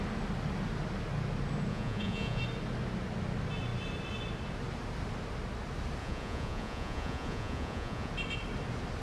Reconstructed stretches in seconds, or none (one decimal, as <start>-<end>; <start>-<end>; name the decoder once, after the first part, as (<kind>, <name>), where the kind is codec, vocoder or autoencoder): 1.7-2.4 (vocoder, Vocos); 6.0-8.1